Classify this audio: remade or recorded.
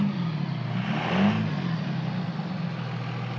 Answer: recorded